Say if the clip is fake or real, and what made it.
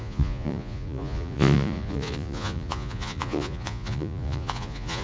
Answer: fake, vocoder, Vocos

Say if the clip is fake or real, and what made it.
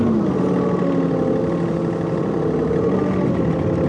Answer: real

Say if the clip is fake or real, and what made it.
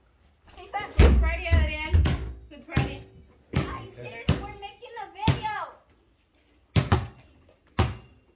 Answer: real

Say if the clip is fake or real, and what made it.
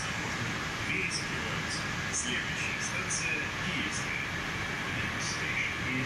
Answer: real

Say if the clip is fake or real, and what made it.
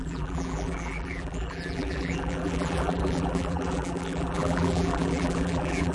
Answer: fake, vocoder, BigVGAN v2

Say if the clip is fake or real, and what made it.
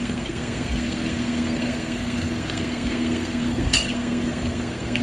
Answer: fake, codec, SNAC